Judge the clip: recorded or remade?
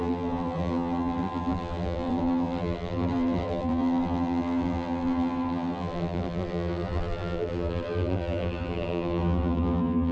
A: remade